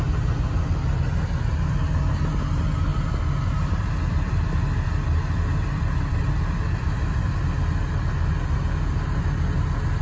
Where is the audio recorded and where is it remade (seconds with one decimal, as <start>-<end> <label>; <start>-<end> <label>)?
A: 0.0-2.9 recorded; 2.9-7.6 remade; 7.6-10.0 recorded